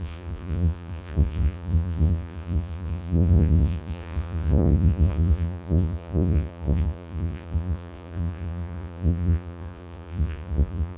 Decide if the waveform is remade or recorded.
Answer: remade